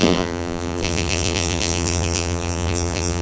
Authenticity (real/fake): fake